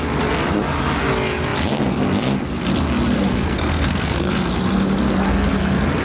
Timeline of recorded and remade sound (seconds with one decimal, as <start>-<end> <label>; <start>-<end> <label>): 0.0-3.3 recorded; 3.3-4.3 remade; 4.3-6.0 recorded